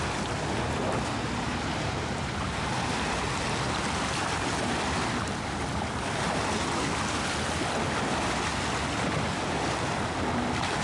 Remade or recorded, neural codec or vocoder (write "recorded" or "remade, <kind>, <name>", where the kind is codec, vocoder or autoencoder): recorded